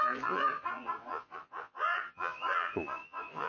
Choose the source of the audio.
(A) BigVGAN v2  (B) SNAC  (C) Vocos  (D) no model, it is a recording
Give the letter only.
C